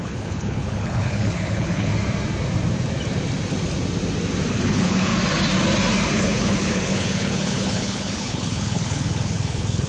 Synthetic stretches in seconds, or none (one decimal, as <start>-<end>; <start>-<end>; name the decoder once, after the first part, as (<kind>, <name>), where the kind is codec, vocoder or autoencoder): 0.0-1.9 (codec, HILCodec); 4.5-5.1; 6.1-9.9